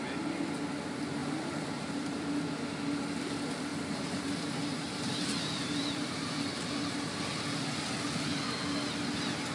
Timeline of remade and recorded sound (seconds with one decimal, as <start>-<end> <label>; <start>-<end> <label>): 0.0-1.2 recorded; 1.2-2.4 remade; 2.4-3.7 recorded; 3.7-6.4 remade; 6.4-9.5 recorded

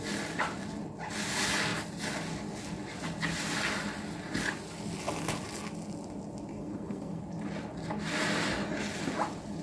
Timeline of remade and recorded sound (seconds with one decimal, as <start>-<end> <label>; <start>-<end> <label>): 0.0-6.5 recorded; 6.5-7.2 remade; 7.2-9.6 recorded

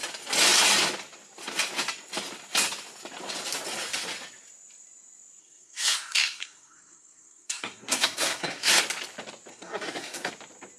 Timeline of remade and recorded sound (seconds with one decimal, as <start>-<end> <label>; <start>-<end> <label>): 0.0-5.4 recorded; 5.4-8.8 remade; 8.8-9.5 recorded; 9.5-10.3 remade; 10.3-10.8 recorded